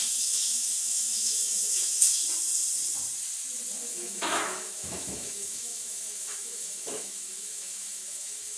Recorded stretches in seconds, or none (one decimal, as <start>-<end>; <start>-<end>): 2.2-3.8